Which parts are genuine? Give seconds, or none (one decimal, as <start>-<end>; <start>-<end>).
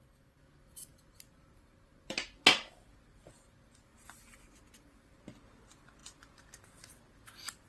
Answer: 0.0-7.7